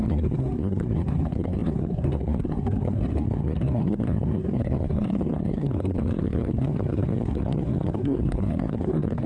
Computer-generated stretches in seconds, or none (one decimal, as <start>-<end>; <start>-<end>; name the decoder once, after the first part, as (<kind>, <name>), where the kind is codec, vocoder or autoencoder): 0.0-9.3 (codec, SNAC)